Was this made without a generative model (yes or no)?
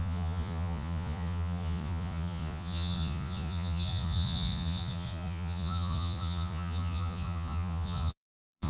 no